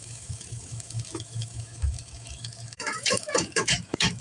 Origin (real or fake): fake